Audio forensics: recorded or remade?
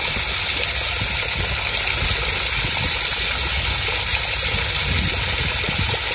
recorded